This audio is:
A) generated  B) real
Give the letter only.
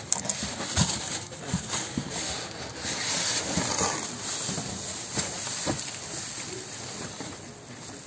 B